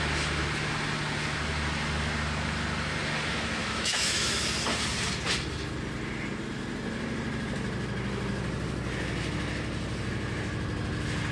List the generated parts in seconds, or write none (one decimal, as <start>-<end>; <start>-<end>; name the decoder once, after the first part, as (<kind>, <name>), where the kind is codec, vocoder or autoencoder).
3.6-4.4 (autoencoder, DAC-VAE)